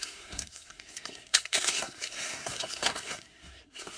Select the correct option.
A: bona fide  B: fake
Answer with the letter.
B